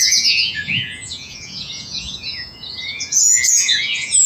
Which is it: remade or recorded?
remade